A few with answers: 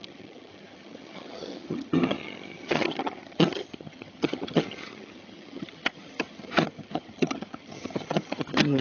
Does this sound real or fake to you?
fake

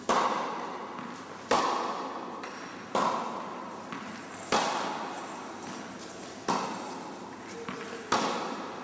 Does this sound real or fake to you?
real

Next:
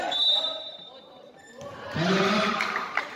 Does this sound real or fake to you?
fake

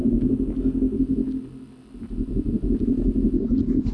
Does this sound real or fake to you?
real